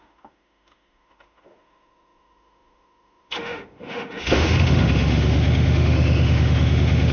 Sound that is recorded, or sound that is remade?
remade